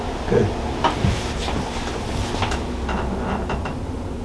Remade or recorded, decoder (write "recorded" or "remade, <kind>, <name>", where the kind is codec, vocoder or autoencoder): recorded